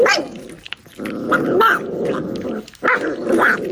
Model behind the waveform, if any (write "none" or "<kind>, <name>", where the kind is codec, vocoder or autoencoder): none